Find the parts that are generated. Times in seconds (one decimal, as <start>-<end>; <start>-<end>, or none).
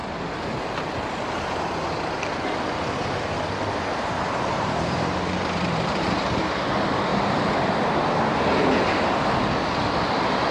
3.9-6.4; 7.1-8.0